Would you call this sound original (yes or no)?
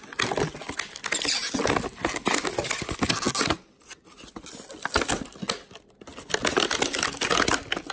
yes